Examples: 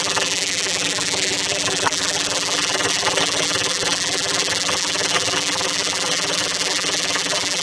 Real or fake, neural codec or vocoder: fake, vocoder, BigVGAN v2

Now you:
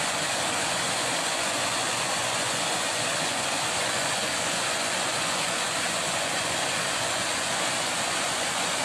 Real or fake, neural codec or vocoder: fake, vocoder, Vocos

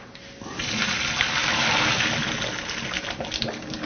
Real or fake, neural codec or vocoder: real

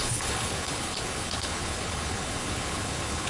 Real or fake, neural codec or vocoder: fake, codec, HILCodec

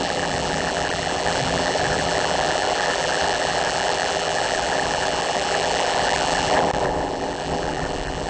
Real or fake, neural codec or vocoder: fake, vocoder, BigVGAN v2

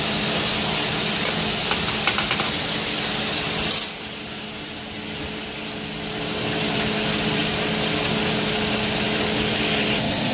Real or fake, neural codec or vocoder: real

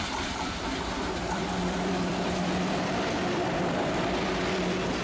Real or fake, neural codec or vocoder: fake, vocoder, BigVGAN v2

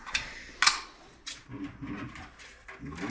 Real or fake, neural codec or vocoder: real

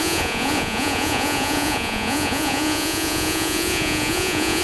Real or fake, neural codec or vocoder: fake, vocoder, Vocos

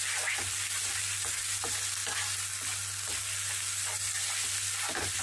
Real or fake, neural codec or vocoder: real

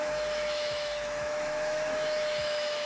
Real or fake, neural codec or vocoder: fake, autoencoder, DAC-VAE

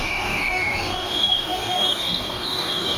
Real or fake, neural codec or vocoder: fake, codec, DAC